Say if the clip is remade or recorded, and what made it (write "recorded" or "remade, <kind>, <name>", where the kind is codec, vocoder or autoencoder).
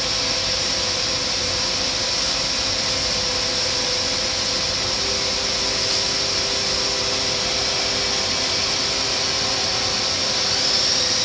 recorded